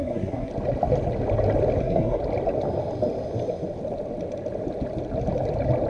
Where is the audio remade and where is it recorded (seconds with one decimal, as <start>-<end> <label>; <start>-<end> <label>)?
0.0-0.5 remade; 0.5-1.8 recorded; 1.8-2.2 remade; 2.2-5.9 recorded